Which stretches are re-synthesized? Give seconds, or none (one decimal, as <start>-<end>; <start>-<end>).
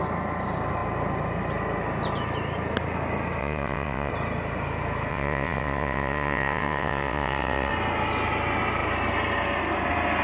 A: 3.4-4.1; 5.1-7.7